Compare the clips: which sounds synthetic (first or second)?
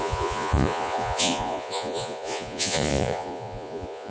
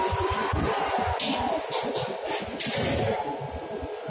first